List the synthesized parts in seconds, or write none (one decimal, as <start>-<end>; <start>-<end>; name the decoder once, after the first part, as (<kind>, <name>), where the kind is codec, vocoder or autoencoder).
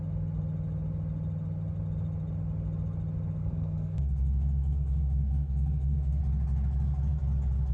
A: 3.4-6.2 (codec, SNAC)